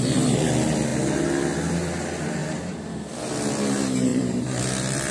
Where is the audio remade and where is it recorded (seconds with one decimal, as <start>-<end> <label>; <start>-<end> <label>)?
0.0-2.4 recorded; 2.4-3.2 remade; 3.2-4.1 recorded; 4.1-4.6 remade; 4.6-5.1 recorded

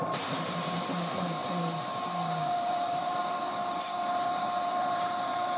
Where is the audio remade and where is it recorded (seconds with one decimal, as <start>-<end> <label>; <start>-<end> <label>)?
0.0-5.6 remade